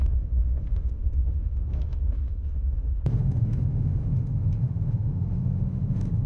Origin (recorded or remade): remade